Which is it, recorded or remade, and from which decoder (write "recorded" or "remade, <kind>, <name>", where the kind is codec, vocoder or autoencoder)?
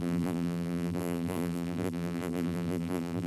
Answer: remade, vocoder, BigVGAN v2